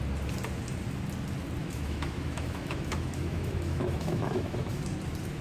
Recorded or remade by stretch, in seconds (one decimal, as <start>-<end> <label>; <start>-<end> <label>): 0.0-1.6 recorded; 1.6-4.8 remade; 4.8-5.4 recorded